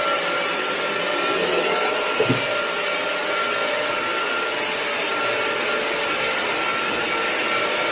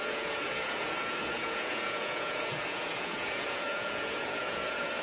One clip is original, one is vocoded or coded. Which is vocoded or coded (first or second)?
second